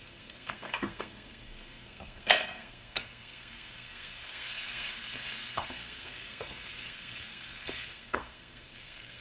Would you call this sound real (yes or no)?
no